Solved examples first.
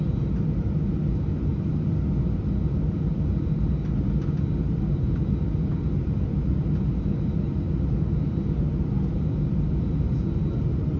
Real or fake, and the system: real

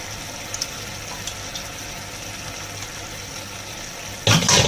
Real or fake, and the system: real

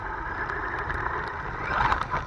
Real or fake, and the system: real